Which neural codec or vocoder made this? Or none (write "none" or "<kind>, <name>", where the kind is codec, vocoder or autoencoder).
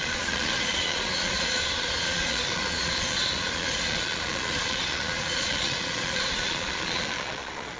vocoder, Vocos